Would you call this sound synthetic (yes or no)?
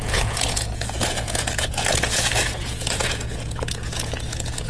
yes